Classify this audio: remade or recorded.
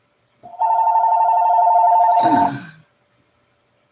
recorded